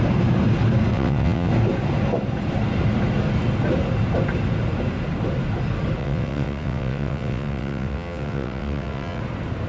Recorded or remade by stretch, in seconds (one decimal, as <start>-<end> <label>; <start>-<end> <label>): 0.0-0.9 recorded; 0.9-1.5 remade; 1.5-6.0 recorded; 6.0-9.2 remade; 9.2-9.7 recorded